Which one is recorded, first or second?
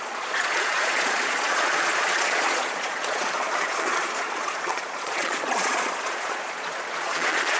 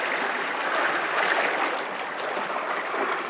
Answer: second